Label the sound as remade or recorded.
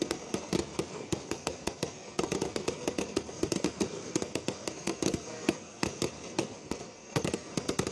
remade